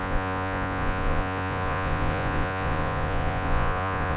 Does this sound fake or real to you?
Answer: fake